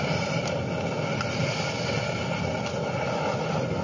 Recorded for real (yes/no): yes